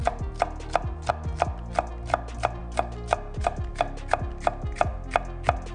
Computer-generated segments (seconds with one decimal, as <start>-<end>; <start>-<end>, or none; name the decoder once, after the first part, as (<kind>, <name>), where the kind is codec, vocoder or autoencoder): none